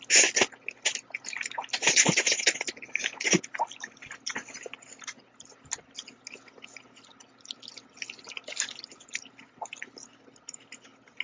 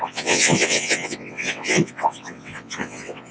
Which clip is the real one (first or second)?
first